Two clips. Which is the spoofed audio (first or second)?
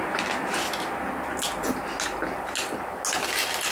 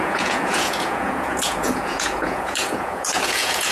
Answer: second